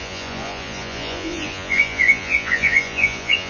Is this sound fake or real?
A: fake